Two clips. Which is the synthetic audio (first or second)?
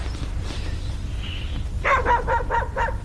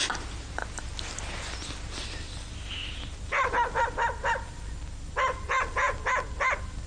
first